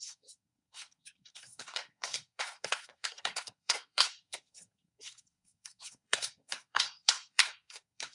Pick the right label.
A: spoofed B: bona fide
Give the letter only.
A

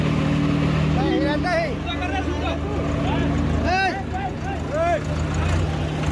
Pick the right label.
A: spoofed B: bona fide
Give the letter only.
B